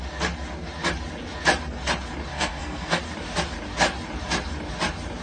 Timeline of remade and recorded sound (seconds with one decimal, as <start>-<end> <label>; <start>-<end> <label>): 0.0-2.3 recorded; 2.3-3.0 remade; 3.0-5.2 recorded